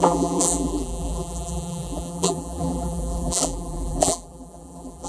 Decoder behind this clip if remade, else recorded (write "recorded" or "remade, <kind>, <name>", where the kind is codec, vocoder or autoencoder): remade, vocoder, BigVGAN v2